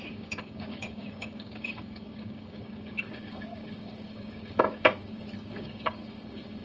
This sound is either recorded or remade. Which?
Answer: remade